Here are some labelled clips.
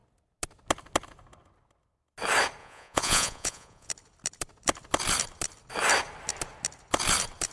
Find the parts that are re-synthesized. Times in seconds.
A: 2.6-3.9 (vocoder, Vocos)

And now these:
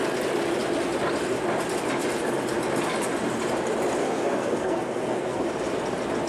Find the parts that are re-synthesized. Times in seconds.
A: 4.0-5.5 (codec, SNAC)

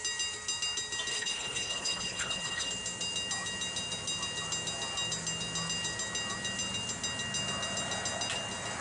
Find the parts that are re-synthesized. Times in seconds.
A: 1.1-2.7 (codec, HILCodec)